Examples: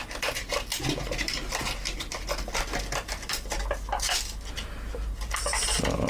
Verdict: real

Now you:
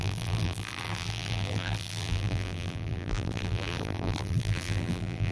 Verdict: fake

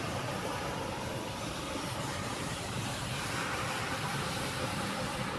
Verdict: fake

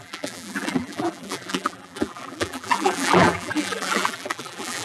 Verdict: fake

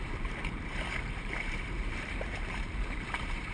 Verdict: fake